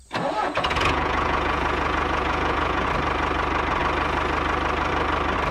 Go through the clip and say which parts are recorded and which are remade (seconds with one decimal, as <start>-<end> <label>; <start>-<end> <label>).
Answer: 0.0-0.4 recorded; 0.4-2.9 remade; 2.9-5.5 recorded